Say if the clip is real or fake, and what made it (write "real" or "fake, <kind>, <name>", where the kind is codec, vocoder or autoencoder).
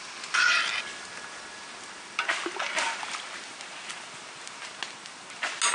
real